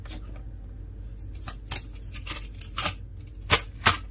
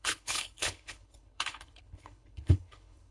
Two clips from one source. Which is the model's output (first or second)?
second